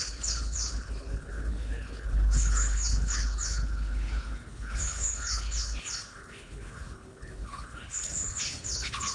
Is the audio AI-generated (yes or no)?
yes